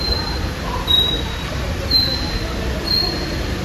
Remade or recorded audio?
remade